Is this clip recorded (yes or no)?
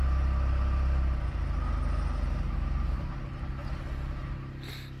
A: yes